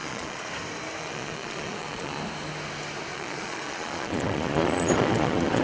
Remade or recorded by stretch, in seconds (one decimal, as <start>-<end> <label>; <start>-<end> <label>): 0.0-0.5 remade; 0.5-1.0 recorded; 1.0-2.2 remade; 2.2-3.1 recorded; 3.1-5.6 remade